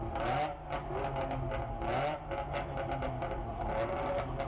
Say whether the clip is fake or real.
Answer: real